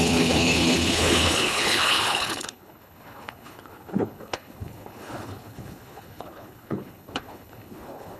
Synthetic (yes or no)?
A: yes